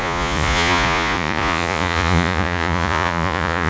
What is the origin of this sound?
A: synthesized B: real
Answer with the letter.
A